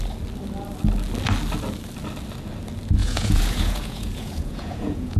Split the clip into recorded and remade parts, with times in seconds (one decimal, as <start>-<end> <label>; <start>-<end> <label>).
0.0-3.0 recorded; 3.0-5.2 remade